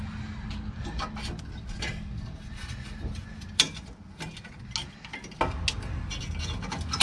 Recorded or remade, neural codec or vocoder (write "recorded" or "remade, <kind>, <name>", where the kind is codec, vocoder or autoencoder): recorded